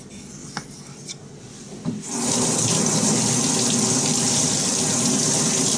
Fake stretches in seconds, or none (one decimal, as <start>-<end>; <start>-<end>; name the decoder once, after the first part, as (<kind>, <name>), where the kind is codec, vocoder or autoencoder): none